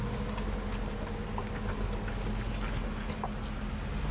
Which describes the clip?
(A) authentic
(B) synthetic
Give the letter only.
A